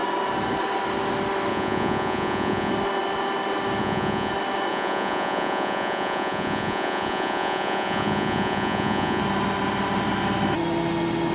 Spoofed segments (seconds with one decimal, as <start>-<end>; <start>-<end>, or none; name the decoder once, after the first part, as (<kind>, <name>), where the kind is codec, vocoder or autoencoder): 1.5-2.7 (vocoder, Vocos); 3.8-4.3; 4.7-9.2